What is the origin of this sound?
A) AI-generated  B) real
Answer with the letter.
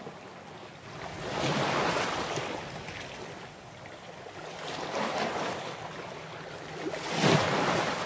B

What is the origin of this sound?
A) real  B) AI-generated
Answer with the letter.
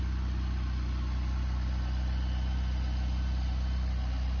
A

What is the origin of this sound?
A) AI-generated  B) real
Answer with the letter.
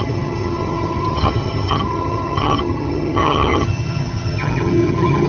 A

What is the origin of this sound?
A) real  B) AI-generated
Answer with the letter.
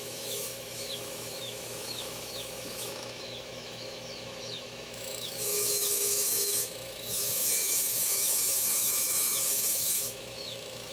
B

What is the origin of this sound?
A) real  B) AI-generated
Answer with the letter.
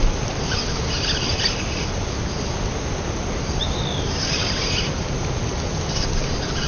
A